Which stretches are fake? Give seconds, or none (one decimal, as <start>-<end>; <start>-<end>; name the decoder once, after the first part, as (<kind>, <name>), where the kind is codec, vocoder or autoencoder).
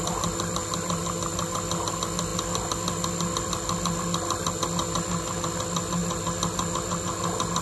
none